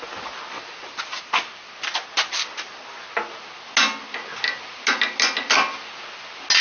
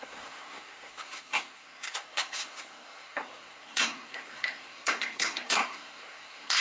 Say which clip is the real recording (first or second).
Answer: first